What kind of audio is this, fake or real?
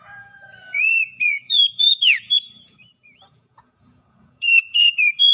fake